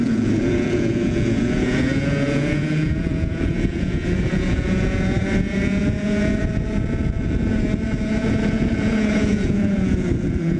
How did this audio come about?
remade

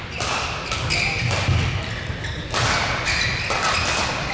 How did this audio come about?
recorded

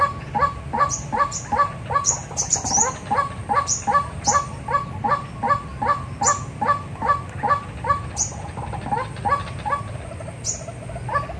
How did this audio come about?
recorded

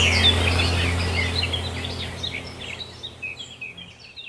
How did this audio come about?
recorded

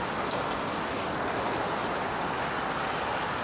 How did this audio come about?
recorded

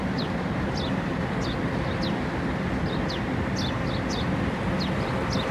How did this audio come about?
recorded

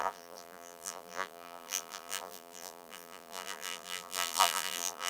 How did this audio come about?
remade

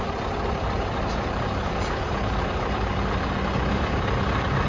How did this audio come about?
remade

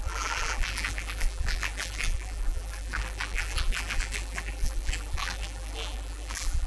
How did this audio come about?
remade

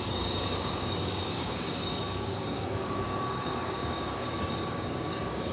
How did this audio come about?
remade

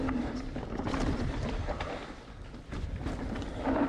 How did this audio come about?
remade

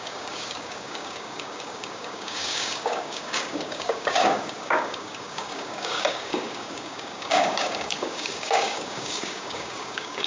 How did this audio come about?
remade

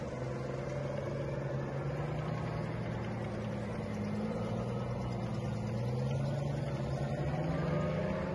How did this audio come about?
recorded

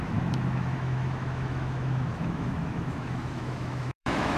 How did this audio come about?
remade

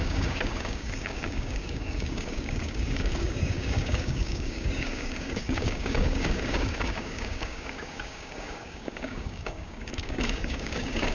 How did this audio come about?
remade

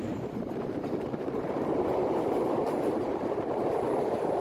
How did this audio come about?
remade